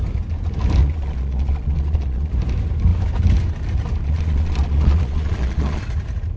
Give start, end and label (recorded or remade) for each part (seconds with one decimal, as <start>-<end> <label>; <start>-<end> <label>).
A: 0.0-0.8 recorded; 0.8-2.3 remade; 2.3-4.0 recorded; 4.0-5.8 remade; 5.8-6.4 recorded